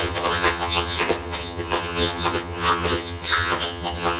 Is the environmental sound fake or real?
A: fake